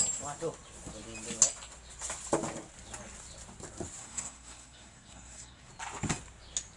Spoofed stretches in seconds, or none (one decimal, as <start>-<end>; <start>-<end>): 4.0-5.7